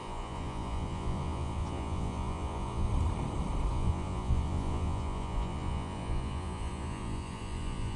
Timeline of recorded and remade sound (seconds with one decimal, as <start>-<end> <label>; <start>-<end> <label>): 0.0-2.9 remade; 2.9-3.7 recorded; 3.7-8.0 remade